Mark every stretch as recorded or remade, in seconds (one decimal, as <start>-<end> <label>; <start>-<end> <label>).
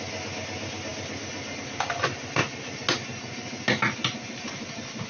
0.0-5.1 recorded